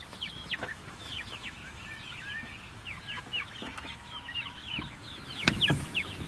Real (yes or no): no